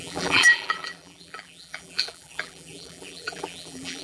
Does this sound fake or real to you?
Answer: fake